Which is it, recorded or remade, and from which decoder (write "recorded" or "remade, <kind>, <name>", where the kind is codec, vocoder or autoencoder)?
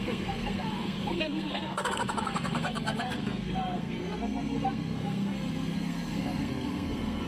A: remade, codec, SNAC